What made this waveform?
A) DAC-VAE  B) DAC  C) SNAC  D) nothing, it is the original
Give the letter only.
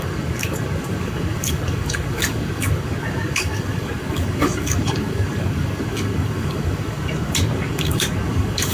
B